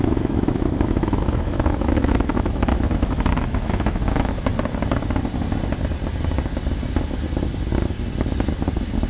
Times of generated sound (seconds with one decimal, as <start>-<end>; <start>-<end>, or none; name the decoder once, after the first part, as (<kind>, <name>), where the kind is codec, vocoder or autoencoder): 0.0-4.5 (autoencoder, DAC-VAE)